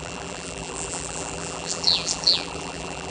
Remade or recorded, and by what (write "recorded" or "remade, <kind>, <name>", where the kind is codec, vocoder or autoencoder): remade, vocoder, BigVGAN v2